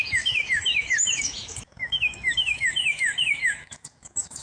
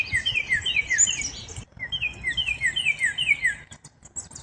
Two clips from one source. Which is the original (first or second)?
second